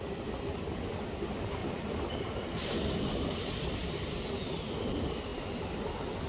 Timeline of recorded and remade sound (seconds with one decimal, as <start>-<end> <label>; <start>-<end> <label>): 0.0-1.6 recorded; 1.6-2.2 remade; 2.2-6.3 recorded